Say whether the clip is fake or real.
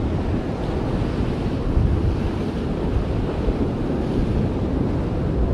real